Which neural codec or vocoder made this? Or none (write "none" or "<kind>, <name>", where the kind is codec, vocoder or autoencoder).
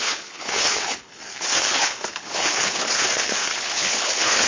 codec, HILCodec